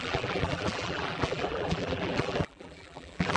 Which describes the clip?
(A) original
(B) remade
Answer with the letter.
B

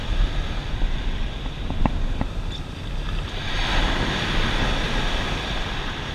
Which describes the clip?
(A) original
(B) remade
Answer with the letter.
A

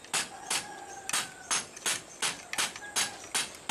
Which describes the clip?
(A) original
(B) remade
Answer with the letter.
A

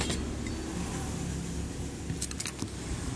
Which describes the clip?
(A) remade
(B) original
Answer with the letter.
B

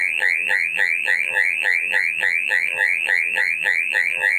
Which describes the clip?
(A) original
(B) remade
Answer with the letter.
B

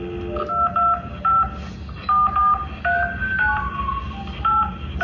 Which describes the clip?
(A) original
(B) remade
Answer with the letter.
A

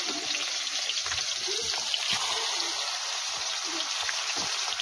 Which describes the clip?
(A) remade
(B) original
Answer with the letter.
B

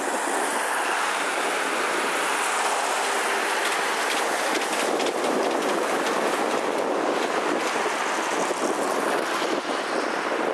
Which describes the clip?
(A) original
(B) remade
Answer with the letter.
A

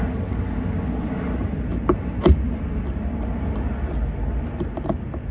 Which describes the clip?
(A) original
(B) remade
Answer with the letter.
A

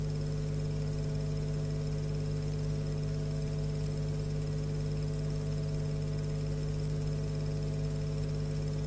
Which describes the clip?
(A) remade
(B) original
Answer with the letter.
B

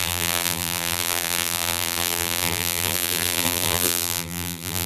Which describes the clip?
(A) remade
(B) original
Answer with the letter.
A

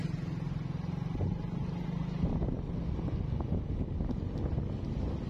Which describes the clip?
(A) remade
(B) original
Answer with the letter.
B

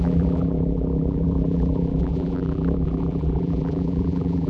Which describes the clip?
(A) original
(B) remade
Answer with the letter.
B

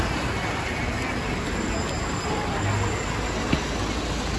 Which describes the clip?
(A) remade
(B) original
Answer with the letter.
B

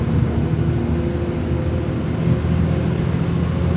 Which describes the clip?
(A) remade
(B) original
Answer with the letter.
B